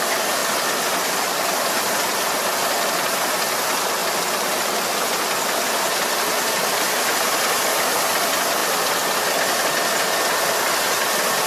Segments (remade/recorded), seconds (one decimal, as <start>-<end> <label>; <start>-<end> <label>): 0.0-11.5 recorded